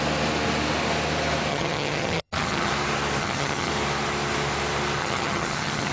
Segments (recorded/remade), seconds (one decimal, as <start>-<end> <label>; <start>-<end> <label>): 0.0-1.5 recorded; 1.5-2.7 remade; 2.7-3.2 recorded; 3.2-3.7 remade; 3.7-5.0 recorded; 5.0-5.9 remade